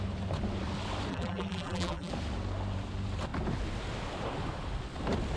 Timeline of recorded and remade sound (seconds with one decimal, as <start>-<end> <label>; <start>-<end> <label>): 0.0-1.1 recorded; 1.1-2.1 remade; 2.1-5.4 recorded